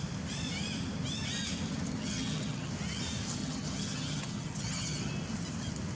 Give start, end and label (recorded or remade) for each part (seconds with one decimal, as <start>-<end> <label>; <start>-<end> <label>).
0.0-2.0 recorded; 2.0-2.7 remade; 2.7-3.4 recorded; 3.4-5.1 remade; 5.1-6.0 recorded